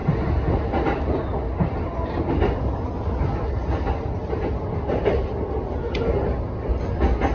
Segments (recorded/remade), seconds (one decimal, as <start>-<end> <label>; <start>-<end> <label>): 0.0-7.3 recorded